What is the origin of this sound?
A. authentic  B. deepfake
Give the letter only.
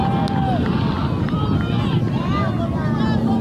A